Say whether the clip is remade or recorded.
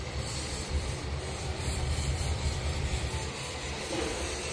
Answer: remade